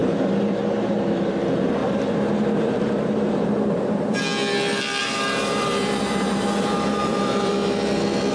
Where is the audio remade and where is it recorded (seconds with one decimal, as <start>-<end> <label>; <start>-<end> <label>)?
0.0-0.6 remade; 0.6-1.8 recorded; 1.8-4.2 remade; 4.2-5.0 recorded; 5.0-7.5 remade; 7.5-8.3 recorded